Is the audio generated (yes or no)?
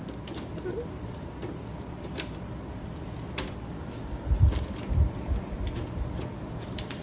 yes